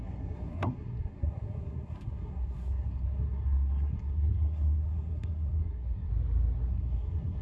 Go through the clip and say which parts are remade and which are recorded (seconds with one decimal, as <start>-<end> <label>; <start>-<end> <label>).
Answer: 0.0-6.1 remade; 6.1-6.7 recorded; 6.7-7.4 remade